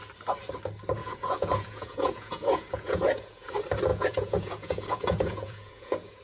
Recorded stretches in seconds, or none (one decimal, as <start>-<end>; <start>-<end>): 0.0-1.0; 3.5-3.9